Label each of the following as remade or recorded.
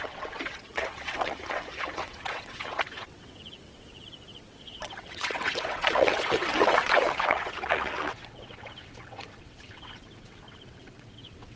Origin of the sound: remade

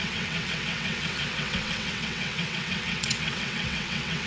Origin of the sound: remade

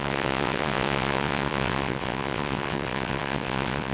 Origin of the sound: remade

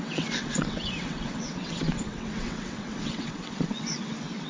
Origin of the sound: remade